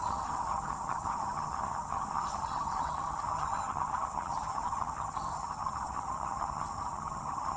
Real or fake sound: fake